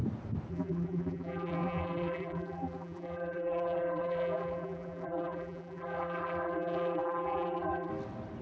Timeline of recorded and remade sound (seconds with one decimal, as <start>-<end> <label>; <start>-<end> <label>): 0.0-0.5 recorded; 0.5-7.9 remade; 7.9-8.4 recorded

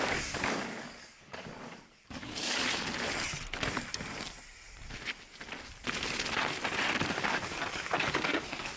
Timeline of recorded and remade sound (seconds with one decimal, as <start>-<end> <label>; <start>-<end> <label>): 0.0-2.6 remade; 2.6-7.2 recorded; 7.2-8.8 remade